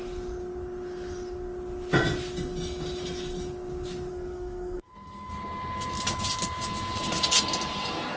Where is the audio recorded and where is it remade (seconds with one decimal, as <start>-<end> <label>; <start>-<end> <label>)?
0.0-4.1 recorded; 4.1-5.3 remade; 5.3-8.2 recorded